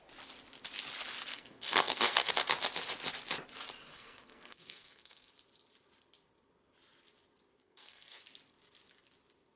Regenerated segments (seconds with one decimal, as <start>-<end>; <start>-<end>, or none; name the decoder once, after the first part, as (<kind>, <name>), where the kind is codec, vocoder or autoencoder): 1.3-2.3 (codec, SNAC); 3.9-5.3; 7.6-8.2